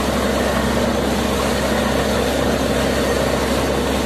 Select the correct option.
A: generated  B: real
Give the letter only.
B